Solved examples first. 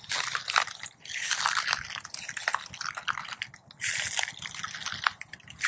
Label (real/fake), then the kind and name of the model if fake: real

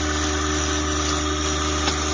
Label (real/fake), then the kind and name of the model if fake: real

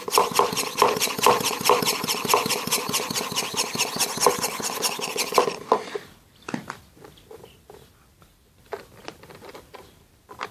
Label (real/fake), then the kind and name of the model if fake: fake, vocoder, BigVGAN v2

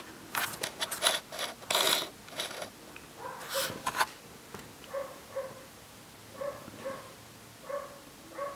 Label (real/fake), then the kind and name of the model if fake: real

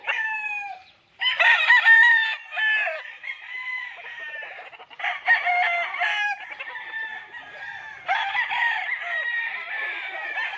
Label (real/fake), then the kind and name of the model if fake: fake, vocoder, BigVGAN v2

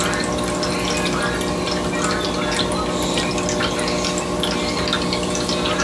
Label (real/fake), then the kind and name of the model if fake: real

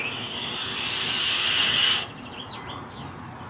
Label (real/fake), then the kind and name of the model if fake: real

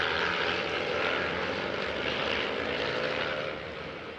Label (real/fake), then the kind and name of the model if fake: fake, vocoder, BigVGAN v2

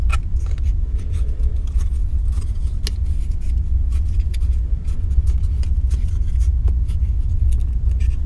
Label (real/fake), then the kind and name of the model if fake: real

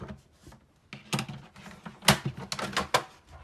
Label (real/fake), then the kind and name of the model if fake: real